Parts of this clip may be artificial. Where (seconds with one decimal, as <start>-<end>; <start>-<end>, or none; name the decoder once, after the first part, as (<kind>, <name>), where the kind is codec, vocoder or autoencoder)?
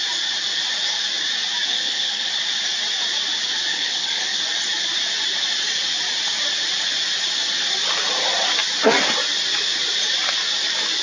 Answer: 1.7-2.3 (codec, HILCodec); 3.7-4.4